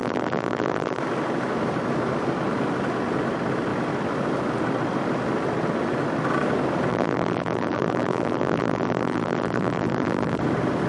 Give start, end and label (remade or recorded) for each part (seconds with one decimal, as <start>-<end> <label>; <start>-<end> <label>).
0.0-1.0 remade; 1.0-6.9 recorded; 6.9-10.4 remade; 10.4-10.9 recorded